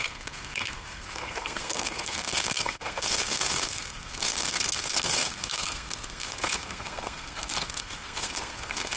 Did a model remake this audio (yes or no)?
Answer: yes